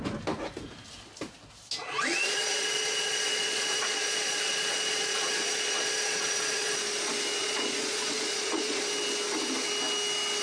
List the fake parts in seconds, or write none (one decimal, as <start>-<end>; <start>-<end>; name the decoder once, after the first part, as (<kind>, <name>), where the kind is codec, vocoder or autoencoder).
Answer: 1.8-6.8 (vocoder, Vocos); 7.4-8.8